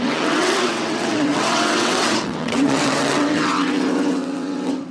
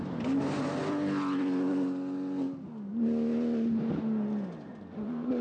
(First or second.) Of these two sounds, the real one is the second